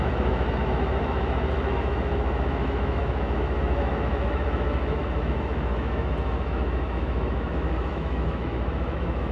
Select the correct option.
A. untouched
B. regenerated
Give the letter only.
B